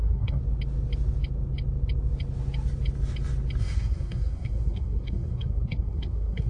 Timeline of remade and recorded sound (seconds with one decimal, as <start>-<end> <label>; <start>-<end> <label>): 0.0-0.4 remade; 0.4-3.6 recorded; 3.6-6.5 remade